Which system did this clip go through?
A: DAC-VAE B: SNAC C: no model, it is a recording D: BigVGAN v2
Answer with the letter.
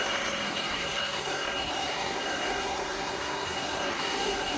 B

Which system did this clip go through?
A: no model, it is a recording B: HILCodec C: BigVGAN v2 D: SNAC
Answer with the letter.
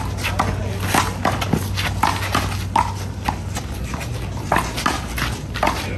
A